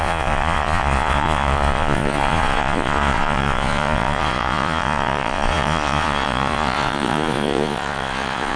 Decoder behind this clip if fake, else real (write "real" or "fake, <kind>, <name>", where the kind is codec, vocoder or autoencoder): fake, vocoder, Vocos